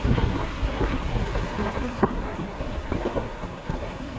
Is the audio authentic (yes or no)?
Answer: no